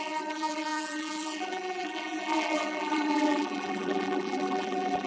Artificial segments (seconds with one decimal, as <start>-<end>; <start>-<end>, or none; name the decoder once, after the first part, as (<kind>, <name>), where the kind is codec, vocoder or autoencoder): 0.0-5.1 (vocoder, BigVGAN v2)